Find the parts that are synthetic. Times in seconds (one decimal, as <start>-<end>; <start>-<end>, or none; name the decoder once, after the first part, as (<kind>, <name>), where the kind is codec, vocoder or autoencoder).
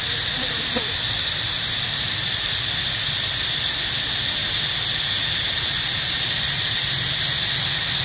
4.4-5.2 (vocoder, BigVGAN v2); 5.9-6.8